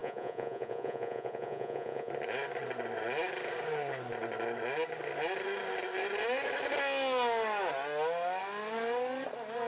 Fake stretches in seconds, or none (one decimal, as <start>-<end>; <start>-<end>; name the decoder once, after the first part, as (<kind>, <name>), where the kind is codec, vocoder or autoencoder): 0.0-2.1 (vocoder, Vocos)